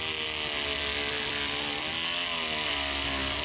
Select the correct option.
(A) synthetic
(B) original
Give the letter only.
B